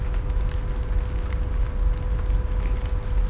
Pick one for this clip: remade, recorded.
recorded